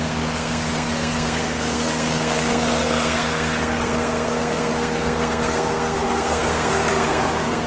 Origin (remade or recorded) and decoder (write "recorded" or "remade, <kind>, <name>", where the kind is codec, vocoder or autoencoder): remade, codec, SNAC